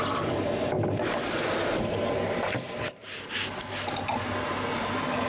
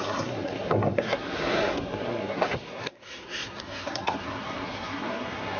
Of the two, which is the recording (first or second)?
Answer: first